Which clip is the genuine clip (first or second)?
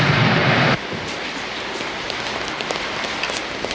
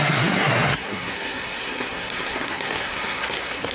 first